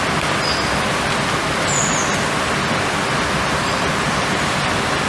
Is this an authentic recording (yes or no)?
yes